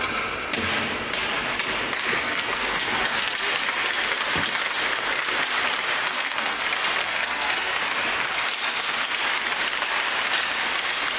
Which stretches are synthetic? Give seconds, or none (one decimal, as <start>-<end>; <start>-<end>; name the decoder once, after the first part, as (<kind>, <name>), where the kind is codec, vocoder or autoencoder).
2.2-3.0 (codec, SNAC); 6.1-6.6; 7.0-7.8

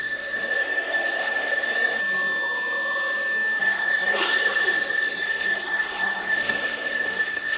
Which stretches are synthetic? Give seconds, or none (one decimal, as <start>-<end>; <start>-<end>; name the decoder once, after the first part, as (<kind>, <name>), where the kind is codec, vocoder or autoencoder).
0.0-2.0 (codec, SNAC); 3.6-7.6

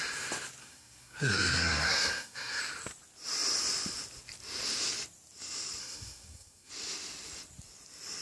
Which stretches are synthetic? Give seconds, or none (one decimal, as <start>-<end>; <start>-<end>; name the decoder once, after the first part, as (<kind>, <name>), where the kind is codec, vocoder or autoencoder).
0.6-2.6 (codec, SNAC); 5.8-6.7

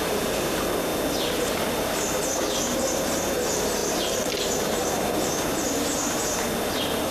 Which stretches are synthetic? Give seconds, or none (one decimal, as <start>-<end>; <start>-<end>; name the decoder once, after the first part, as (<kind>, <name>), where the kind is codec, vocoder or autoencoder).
3.8-6.2 (vocoder, BigVGAN v2)

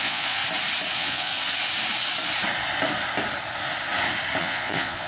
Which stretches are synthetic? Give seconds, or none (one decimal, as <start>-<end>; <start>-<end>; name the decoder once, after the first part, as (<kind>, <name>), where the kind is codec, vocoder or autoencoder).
0.0-0.4 (vocoder, Vocos); 0.9-1.3; 4.4-5.1

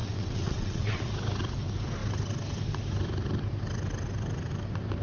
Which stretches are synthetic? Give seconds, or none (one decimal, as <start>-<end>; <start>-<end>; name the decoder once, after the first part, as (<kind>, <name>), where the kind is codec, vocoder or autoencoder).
0.0-1.0 (vocoder, WaveNeXt)

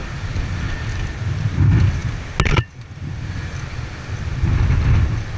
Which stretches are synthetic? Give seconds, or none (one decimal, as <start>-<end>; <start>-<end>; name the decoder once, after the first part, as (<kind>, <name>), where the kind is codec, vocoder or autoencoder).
none

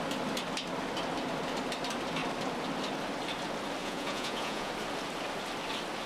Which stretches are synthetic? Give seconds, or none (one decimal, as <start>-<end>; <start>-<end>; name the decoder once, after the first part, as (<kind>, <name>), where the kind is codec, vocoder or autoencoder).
3.8-4.7 (vocoder, Vocos)